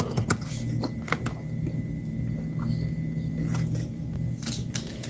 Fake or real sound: real